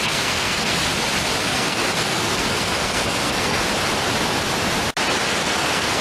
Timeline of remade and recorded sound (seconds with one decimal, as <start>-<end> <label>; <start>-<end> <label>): 0.0-0.9 remade; 0.9-1.4 recorded; 1.4-3.7 remade; 3.7-5.4 recorded; 5.4-6.0 remade